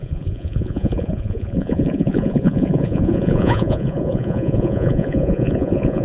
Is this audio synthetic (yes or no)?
yes